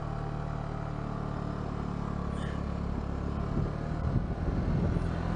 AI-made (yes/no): no